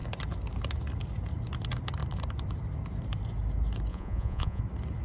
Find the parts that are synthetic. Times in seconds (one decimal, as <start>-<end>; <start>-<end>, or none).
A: 3.9-4.6